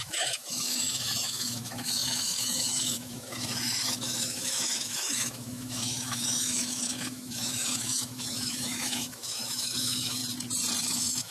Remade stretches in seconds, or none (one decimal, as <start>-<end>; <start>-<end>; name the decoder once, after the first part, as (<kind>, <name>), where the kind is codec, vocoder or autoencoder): 0.0-10.2 (autoencoder, DAC-VAE); 10.8-11.3